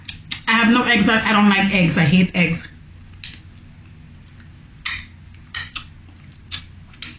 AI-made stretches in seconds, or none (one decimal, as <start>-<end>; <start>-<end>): none